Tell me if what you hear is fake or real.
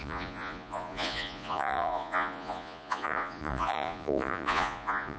fake